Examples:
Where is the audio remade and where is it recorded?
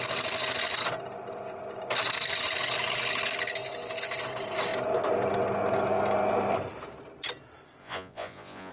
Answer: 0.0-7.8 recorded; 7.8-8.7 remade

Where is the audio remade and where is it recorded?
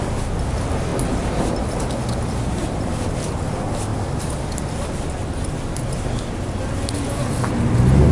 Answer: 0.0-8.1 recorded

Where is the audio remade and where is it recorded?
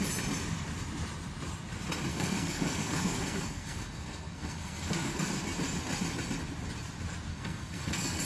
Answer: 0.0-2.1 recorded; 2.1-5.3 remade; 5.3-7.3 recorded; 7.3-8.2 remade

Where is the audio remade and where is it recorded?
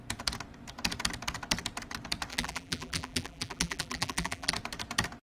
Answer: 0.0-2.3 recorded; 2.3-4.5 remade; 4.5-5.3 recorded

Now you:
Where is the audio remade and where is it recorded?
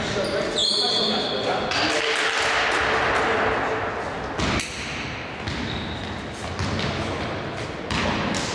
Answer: 0.0-8.5 recorded